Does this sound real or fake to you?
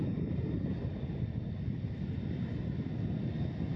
real